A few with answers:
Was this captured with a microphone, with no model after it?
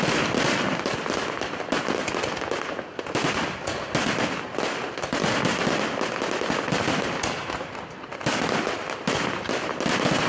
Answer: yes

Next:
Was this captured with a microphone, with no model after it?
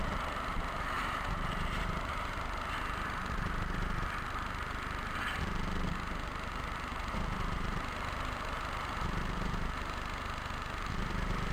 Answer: no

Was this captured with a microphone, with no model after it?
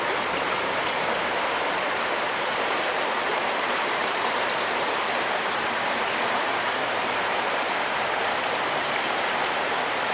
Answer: no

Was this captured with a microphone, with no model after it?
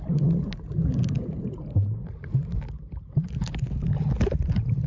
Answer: yes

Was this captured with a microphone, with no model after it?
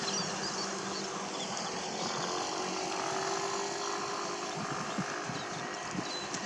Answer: yes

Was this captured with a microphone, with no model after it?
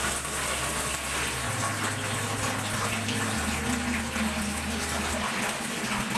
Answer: yes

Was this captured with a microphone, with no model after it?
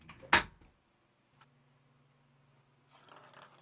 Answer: yes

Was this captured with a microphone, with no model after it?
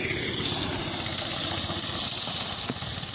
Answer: yes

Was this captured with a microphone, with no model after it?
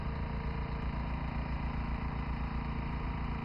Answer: yes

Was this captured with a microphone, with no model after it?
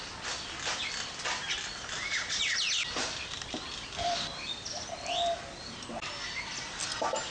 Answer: yes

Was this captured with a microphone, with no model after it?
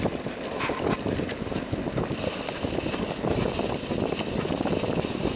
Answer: yes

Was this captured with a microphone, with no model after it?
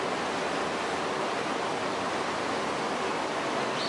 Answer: yes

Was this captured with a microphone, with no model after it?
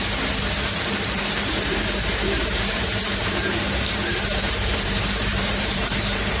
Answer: no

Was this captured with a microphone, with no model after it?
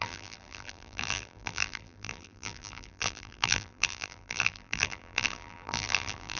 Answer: no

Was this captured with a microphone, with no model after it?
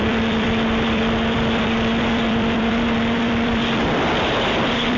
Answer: no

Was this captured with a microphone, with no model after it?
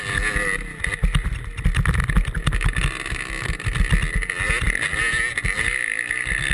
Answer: yes